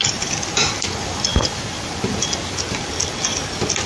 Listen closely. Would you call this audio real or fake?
real